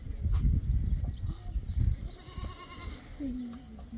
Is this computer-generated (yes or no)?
no